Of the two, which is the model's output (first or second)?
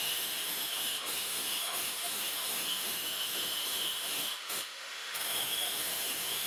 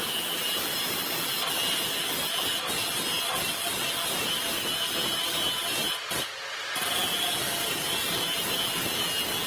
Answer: first